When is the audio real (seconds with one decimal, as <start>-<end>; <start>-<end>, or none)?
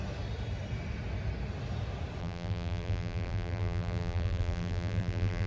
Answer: 0.0-2.2